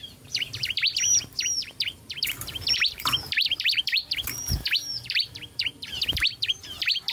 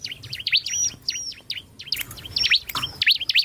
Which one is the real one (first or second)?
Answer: second